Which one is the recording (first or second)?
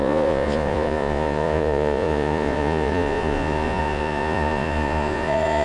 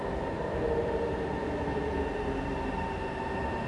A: second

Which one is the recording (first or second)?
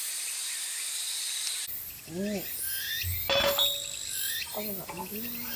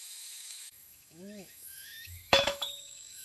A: first